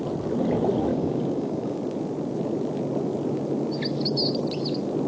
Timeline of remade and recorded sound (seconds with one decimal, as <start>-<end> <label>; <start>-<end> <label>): 0.0-0.9 recorded; 0.9-1.8 remade; 1.8-5.1 recorded